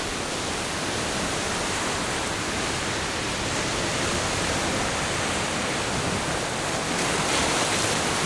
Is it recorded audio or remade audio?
recorded